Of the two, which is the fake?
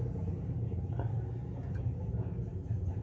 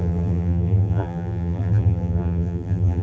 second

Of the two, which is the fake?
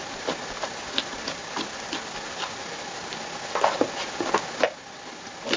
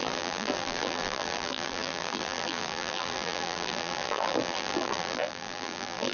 second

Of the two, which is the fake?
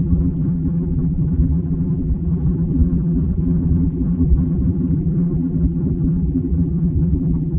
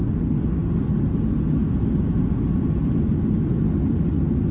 first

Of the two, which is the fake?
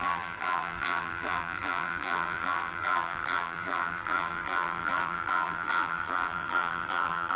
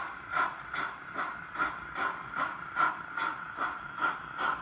first